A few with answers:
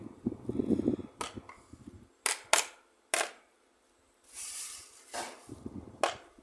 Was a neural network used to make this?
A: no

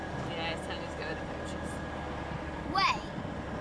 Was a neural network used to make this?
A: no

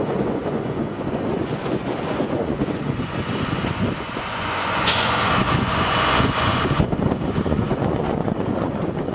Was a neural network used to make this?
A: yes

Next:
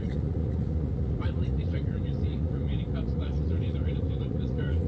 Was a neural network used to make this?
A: yes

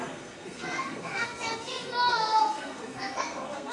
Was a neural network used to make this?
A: yes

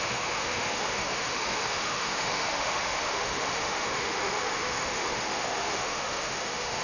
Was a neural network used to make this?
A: yes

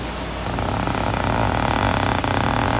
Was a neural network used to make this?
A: no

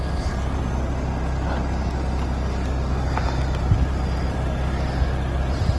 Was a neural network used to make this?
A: no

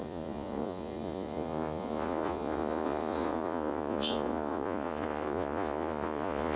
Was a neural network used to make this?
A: yes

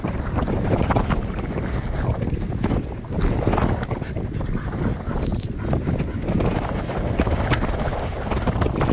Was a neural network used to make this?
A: no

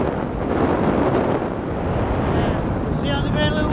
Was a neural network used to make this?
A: no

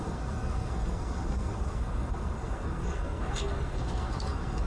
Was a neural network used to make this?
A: yes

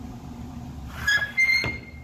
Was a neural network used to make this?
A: no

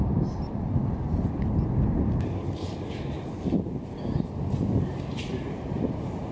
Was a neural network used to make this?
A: no